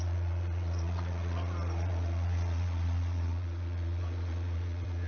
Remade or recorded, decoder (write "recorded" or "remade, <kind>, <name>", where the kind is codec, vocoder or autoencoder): remade, vocoder, Vocos